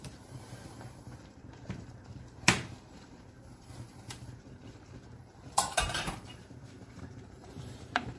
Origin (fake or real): fake